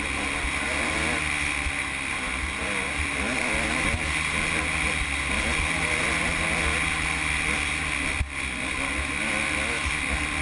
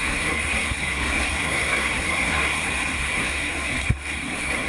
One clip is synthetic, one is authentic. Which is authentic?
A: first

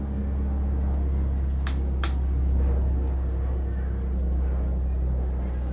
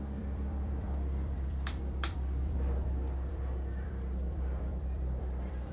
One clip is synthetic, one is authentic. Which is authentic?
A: first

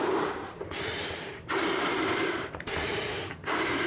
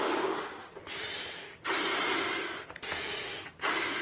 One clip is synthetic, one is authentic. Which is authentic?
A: second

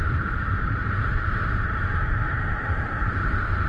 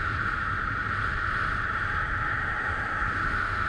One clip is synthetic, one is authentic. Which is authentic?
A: second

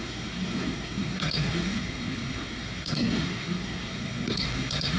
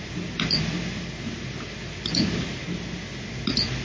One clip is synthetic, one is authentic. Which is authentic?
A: second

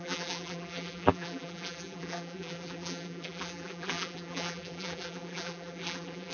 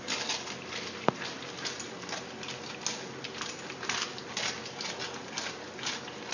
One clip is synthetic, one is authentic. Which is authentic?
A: second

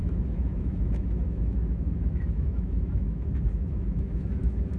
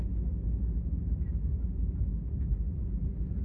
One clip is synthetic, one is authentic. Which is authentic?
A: second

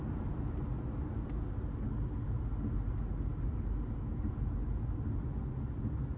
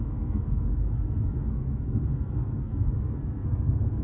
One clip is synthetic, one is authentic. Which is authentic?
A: first